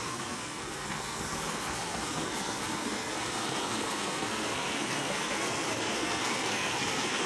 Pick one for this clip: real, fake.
fake